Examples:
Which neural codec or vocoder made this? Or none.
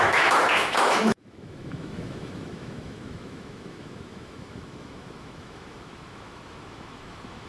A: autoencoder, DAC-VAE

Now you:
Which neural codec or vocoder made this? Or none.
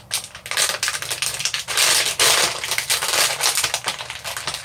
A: none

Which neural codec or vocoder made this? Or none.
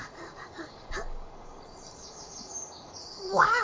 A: codec, DAC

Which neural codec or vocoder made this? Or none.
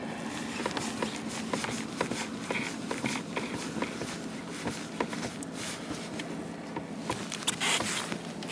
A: none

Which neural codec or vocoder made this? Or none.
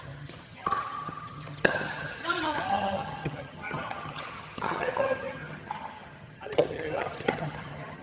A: vocoder, HiFi-GAN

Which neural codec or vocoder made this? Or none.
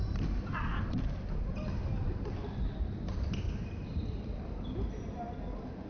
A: none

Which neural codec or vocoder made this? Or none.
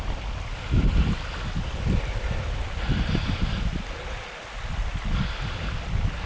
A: none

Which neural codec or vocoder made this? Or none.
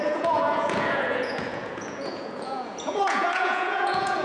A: vocoder, Vocos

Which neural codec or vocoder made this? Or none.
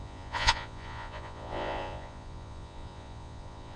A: vocoder, Vocos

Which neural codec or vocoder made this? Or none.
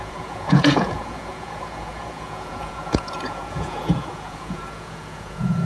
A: vocoder, Vocos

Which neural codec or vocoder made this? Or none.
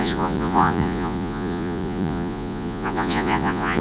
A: vocoder, Vocos